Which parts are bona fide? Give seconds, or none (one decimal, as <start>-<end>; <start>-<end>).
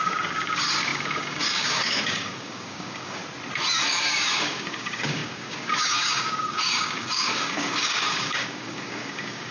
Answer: 3.2-3.9